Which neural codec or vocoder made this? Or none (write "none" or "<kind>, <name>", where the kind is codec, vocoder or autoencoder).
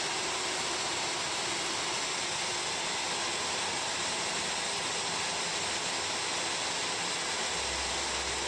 none